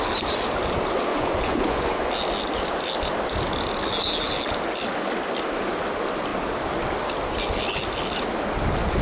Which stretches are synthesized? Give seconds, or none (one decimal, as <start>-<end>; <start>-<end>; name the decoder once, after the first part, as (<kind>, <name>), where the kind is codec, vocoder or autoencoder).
1.1-2.1 (vocoder, Vocos)

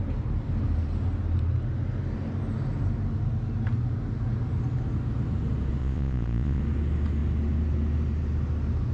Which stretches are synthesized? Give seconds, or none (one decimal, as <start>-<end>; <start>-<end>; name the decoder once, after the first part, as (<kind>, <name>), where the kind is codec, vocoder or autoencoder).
5.8-6.6 (vocoder, Vocos)

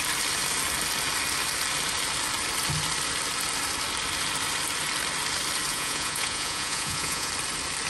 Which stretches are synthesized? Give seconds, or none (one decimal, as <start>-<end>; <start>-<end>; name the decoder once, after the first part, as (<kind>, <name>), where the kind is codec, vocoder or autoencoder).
5.7-7.3 (vocoder, Vocos)

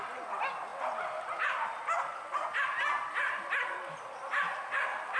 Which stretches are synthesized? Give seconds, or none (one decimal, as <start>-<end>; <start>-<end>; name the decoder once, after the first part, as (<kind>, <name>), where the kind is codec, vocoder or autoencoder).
none

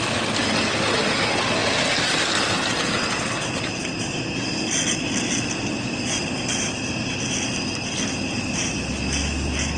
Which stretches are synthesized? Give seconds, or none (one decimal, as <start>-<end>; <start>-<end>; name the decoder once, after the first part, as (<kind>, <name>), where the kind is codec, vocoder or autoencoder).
none

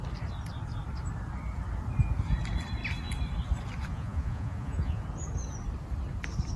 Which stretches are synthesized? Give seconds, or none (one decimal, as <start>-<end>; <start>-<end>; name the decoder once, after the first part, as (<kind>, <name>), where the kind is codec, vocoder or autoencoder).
3.9-5.0 (vocoder, Vocos)

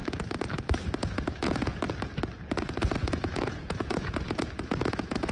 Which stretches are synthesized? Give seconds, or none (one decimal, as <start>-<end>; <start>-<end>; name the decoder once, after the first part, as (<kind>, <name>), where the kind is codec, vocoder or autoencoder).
1.0-1.7 (vocoder, Vocos); 2.5-5.3